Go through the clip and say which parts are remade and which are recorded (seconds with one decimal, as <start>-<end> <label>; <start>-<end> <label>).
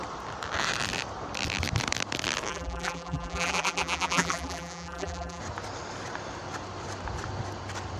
0.0-2.5 recorded; 2.5-5.4 remade; 5.4-8.0 recorded